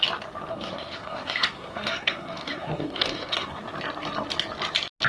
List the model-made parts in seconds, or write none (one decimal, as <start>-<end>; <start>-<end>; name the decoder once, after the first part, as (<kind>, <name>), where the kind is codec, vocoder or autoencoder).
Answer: 0.5-3.6 (codec, SNAC)